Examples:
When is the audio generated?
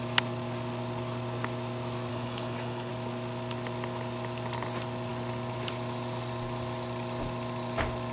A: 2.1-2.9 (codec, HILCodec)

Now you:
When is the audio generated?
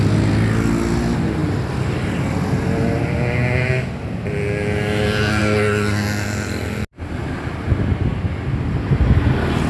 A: none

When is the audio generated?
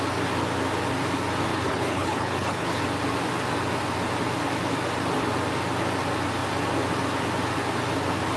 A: 1.5-2.8 (codec, HILCodec)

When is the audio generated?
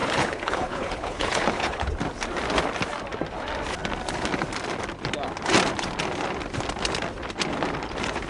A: 0.0-1.9 (codec, HILCodec)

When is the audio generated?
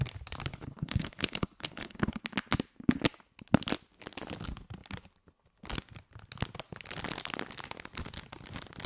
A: 0.5-2.2 (codec, HILCodec)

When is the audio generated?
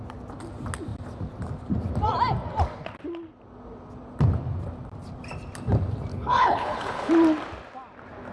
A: 6.1-7.1 (codec, HILCodec)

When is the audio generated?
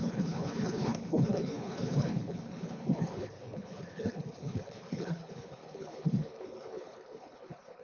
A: 0.0-7.8 (codec, HILCodec)